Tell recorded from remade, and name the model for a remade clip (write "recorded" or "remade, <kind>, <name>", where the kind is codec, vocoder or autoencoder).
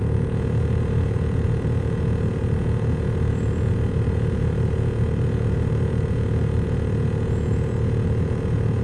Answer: remade, vocoder, Vocos